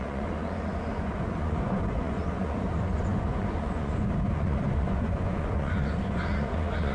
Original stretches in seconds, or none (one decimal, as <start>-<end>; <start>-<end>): none